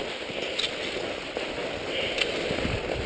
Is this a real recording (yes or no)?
yes